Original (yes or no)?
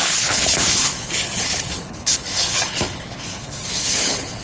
no